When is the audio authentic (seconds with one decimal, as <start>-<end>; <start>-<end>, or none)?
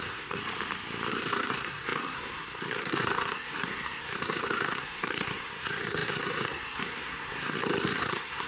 0.4-1.1